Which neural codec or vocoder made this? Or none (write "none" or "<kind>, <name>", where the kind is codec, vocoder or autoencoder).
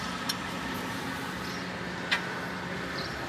none